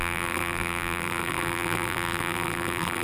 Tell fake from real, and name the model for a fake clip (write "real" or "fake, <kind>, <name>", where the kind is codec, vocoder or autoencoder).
fake, vocoder, BigVGAN v2